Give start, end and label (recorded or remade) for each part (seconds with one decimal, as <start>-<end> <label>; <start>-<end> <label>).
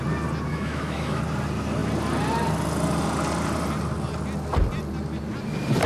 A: 0.0-0.5 recorded; 0.5-1.2 remade; 1.2-5.9 recorded